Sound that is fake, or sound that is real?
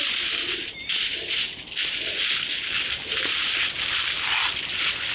real